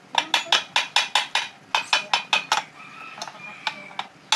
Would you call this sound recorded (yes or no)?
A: yes